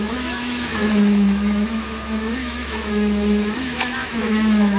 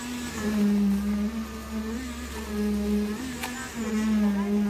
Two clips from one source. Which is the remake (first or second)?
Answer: first